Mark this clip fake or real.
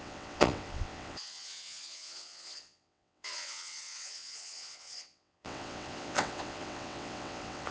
fake